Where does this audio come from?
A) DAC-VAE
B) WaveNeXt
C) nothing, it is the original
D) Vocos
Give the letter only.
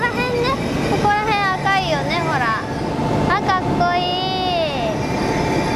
C